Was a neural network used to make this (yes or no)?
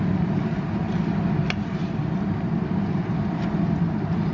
no